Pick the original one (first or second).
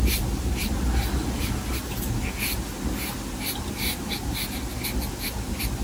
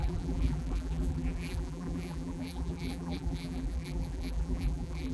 first